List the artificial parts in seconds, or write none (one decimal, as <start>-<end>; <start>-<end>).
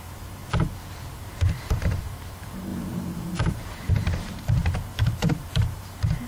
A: 0.0-0.4; 0.9-6.3